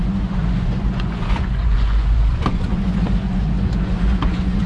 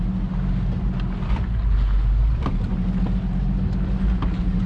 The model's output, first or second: first